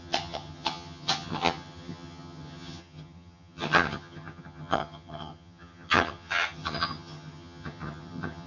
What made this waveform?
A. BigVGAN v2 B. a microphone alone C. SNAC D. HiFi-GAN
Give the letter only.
D